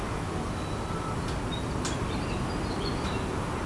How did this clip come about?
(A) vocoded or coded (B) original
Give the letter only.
B